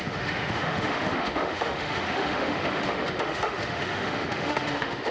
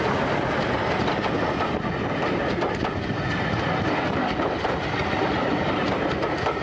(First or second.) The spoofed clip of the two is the first